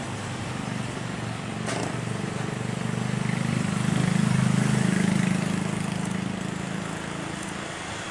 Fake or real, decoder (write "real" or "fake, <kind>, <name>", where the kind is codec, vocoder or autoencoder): real